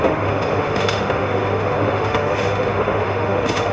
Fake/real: fake